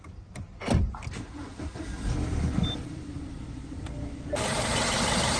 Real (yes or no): no